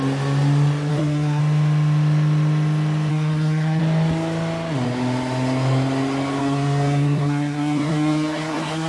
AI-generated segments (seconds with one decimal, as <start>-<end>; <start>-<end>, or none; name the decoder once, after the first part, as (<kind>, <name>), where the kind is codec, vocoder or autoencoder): 0.9-1.4 (codec, SNAC); 3.1-3.8; 6.4-8.9

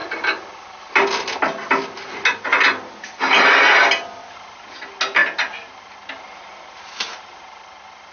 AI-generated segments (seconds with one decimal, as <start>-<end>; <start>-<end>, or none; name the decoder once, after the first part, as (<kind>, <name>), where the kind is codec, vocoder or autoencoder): none

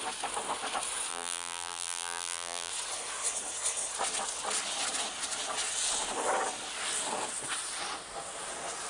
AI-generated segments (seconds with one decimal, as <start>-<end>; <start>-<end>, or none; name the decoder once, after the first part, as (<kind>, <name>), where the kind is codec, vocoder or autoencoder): 1.1-2.7 (vocoder, BigVGAN v2)

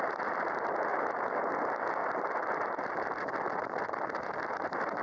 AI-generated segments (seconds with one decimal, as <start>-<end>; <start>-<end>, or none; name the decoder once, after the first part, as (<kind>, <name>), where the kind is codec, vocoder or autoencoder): 0.0-0.9 (vocoder, BigVGAN v2); 1.5-5.0

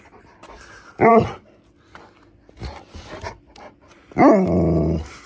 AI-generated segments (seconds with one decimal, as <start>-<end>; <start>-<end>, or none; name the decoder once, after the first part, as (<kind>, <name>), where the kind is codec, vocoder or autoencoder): none